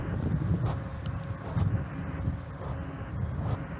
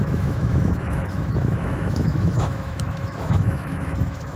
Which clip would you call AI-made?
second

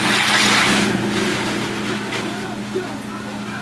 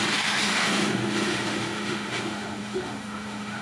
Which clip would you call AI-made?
second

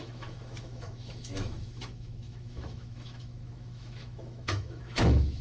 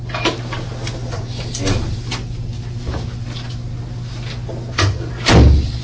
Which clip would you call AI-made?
first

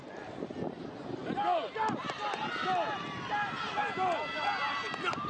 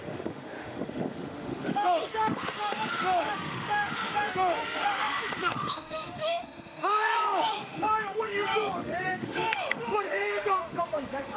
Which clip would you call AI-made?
second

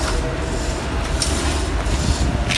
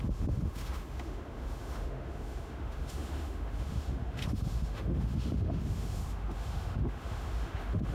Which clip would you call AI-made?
second